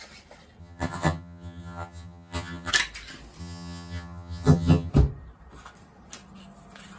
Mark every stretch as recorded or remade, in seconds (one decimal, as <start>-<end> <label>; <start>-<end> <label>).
0.0-0.6 recorded; 0.6-2.7 remade; 2.7-3.4 recorded; 3.4-4.9 remade; 4.9-7.0 recorded